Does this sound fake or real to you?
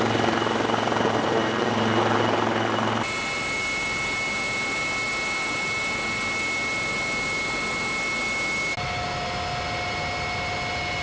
real